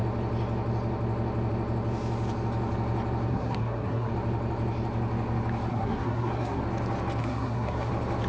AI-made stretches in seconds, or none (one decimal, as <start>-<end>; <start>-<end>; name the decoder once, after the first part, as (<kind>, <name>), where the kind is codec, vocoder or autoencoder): 3.3-4.1 (codec, SNAC); 5.7-6.6; 7.2-7.9